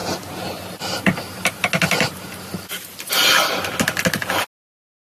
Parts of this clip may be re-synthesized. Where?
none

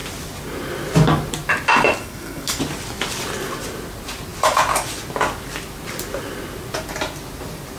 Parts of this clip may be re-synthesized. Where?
2.0-2.6 (codec, SNAC)

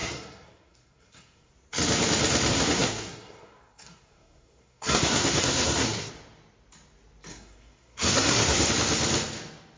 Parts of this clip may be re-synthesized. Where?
0.0-1.5 (codec, SNAC); 2.5-6.1; 7.3-8.7

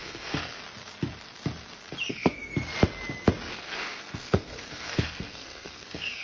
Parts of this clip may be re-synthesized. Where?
0.0-0.6 (codec, SNAC); 2.1-2.5; 3.5-6.2

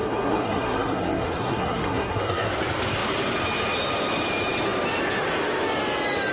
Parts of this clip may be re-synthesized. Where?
0.0-2.5 (codec, SNAC)

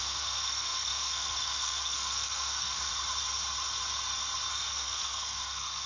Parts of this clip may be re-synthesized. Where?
0.0-2.9 (codec, SNAC); 4.5-5.9

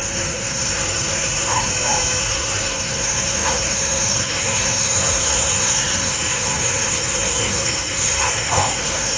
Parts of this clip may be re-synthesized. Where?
0.0-1.7 (codec, SNAC); 2.2-9.2